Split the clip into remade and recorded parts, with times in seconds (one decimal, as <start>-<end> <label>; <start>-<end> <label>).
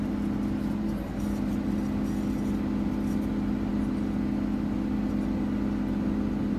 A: 0.0-6.6 recorded